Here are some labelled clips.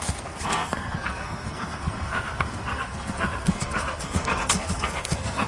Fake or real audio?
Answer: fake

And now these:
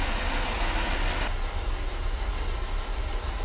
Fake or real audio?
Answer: real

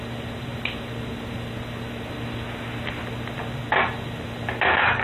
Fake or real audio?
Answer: real